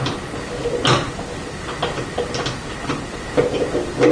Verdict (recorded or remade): recorded